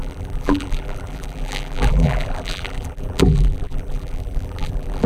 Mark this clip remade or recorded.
remade